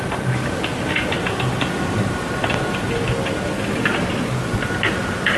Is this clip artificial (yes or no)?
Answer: no